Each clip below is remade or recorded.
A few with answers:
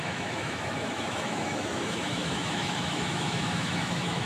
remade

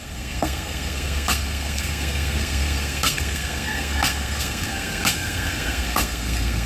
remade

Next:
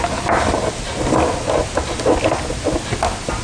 recorded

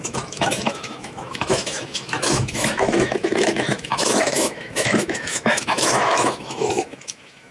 remade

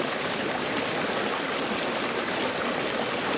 recorded